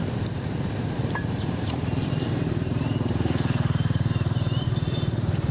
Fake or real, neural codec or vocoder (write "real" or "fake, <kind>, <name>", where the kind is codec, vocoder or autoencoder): fake, vocoder, BigVGAN v2